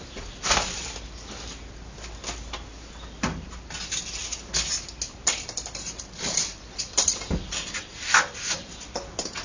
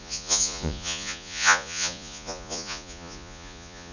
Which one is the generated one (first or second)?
second